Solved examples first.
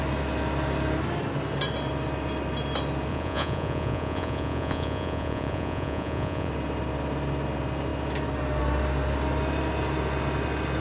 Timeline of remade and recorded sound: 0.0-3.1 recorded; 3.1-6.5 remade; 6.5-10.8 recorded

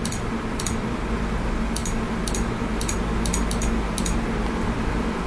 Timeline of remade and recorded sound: 0.0-1.8 remade; 1.8-3.8 recorded; 3.8-5.3 remade

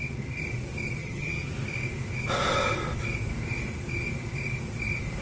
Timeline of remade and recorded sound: 0.0-1.0 recorded; 1.0-1.5 remade; 1.5-5.2 recorded

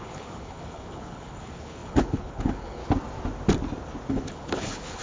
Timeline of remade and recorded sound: 0.0-2.8 remade; 2.8-4.1 recorded; 4.1-5.0 remade